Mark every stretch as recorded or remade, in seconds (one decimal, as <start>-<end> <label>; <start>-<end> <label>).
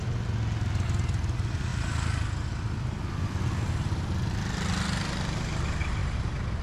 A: 0.0-6.0 recorded; 6.0-6.6 remade